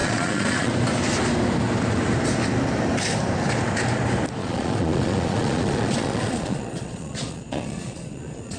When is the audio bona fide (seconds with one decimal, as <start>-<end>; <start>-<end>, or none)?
0.7-4.4